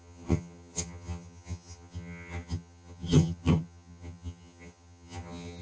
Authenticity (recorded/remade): remade